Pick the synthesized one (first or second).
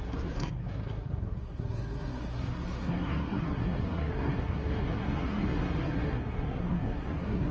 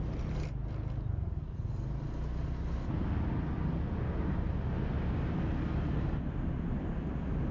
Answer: first